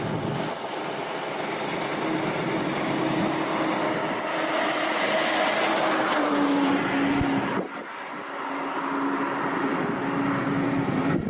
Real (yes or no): yes